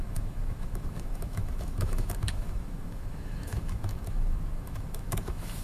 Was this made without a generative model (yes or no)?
no